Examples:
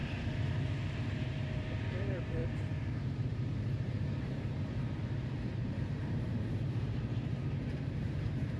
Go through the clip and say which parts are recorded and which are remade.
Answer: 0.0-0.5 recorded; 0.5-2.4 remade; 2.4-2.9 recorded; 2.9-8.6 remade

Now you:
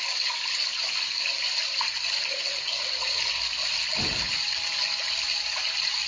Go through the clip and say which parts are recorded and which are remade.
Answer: 0.0-6.1 recorded